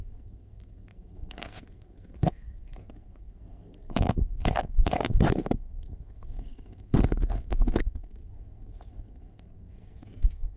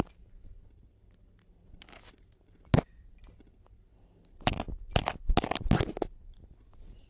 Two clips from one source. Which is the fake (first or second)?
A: first